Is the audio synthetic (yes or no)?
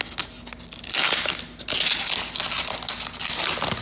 no